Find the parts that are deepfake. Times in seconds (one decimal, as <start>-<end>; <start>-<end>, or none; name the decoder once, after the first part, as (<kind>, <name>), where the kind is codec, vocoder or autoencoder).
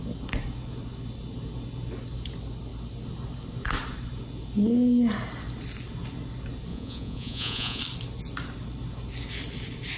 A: 6.7-7.8 (vocoder, Vocos)